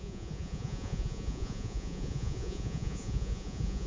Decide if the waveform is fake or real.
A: fake